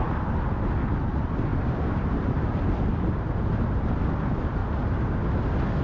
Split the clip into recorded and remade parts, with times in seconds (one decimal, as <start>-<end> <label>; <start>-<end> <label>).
0.0-0.9 recorded; 0.9-4.6 remade; 4.6-5.8 recorded